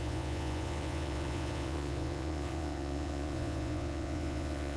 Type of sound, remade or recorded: remade